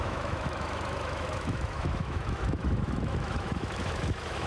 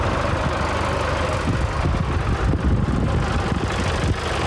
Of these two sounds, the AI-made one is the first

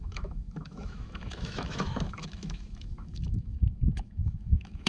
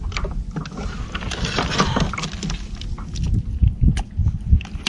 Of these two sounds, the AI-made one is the first